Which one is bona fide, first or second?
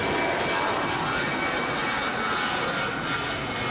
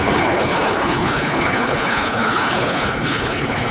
first